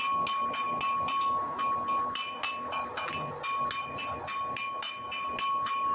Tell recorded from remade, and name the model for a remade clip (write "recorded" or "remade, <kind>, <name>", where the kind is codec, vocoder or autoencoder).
recorded